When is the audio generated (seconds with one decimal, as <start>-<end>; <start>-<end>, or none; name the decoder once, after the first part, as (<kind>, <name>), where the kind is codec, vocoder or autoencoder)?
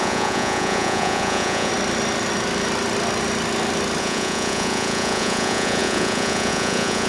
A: 0.0-1.7 (vocoder, Vocos); 4.0-7.1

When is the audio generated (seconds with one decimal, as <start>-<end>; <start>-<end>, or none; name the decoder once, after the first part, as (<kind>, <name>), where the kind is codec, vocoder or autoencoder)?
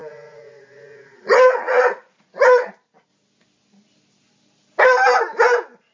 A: 0.0-2.7 (vocoder, Vocos)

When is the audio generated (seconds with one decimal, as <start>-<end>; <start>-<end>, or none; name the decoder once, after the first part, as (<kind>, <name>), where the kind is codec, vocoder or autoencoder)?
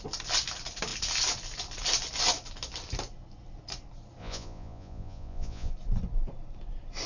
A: 4.2-5.7 (vocoder, Vocos)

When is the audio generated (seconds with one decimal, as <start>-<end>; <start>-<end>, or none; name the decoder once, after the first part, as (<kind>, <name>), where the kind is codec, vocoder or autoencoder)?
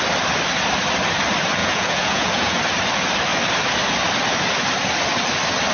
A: 1.6-2.6 (vocoder, Vocos)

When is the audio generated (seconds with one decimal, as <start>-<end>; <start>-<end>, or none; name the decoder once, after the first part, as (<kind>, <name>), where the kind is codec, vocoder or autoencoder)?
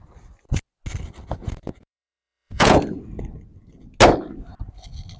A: 1.4-2.8 (vocoder, Vocos)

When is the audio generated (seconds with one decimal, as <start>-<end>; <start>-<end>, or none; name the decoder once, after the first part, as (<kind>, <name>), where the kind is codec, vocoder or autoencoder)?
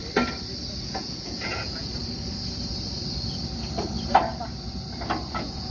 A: 0.8-1.9 (vocoder, Vocos); 5.3-5.7